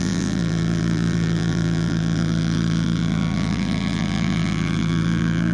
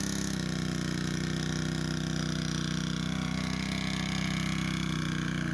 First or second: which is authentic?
second